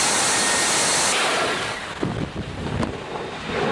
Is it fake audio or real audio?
real